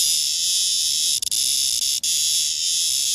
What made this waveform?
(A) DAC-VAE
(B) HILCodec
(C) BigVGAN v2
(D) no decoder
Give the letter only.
D